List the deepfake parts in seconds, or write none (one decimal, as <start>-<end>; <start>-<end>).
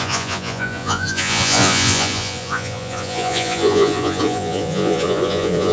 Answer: 0.0-5.7